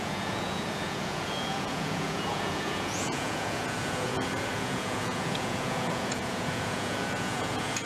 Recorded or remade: remade